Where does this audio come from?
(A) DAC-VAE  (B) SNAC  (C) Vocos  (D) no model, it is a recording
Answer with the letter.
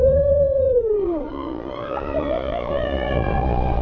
C